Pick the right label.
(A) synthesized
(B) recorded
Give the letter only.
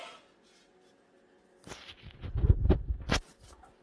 B